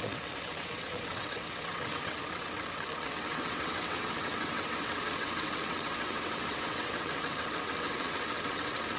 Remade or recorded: remade